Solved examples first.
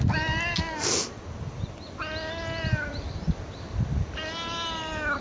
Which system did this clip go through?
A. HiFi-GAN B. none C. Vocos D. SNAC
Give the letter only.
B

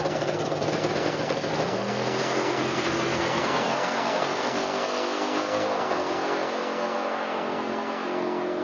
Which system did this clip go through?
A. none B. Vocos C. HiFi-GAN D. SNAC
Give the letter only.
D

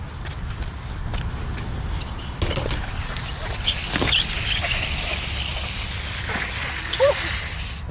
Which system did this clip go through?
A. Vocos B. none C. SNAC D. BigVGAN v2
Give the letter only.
B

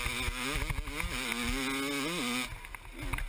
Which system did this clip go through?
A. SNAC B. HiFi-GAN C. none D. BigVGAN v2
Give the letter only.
C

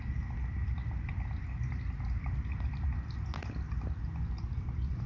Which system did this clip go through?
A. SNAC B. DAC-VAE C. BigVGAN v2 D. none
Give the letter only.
D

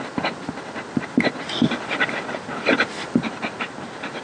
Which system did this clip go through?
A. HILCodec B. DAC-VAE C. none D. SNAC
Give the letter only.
C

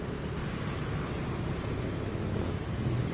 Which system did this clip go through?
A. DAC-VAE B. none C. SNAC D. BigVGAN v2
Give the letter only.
B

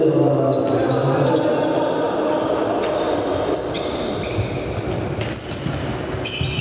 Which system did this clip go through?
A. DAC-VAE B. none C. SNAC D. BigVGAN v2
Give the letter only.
B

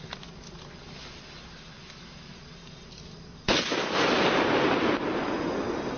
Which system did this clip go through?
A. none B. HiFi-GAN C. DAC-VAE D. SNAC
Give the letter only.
A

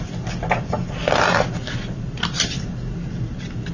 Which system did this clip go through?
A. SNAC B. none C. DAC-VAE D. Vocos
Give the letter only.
B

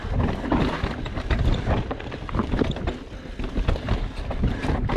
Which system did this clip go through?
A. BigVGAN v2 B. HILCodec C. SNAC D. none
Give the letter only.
D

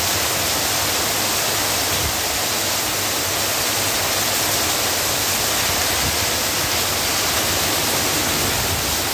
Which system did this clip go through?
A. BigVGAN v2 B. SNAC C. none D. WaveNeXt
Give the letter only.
C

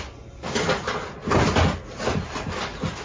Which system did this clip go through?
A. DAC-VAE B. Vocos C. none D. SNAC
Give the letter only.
C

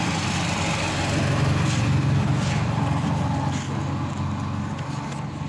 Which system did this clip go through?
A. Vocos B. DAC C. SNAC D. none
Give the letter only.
D